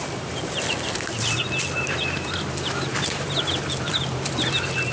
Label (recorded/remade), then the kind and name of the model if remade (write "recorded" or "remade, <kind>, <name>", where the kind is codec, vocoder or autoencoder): remade, vocoder, BigVGAN v2